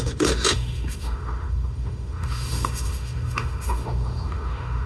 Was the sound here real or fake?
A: fake